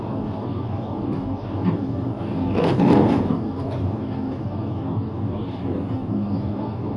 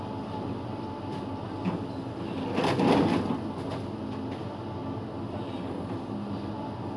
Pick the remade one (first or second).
first